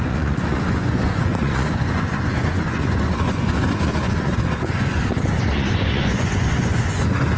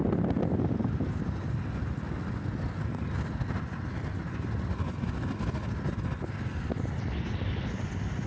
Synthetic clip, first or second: first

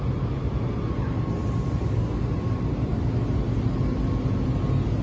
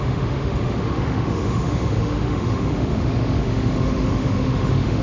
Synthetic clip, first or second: second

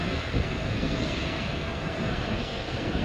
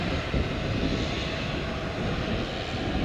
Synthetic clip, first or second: first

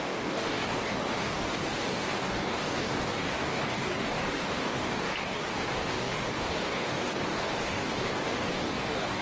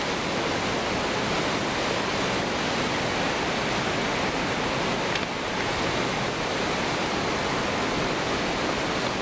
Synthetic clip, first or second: first